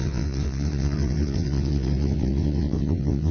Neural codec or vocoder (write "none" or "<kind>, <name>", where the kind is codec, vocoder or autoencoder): vocoder, WaveNeXt